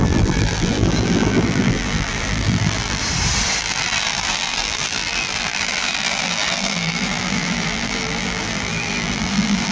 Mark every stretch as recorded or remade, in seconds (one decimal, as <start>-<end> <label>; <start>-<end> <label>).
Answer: 0.0-3.0 remade; 3.0-3.6 recorded; 3.6-9.7 remade